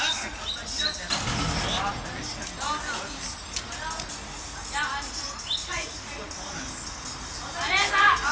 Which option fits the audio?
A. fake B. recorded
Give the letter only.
B